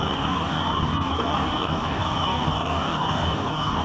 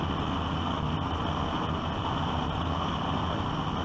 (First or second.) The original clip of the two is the second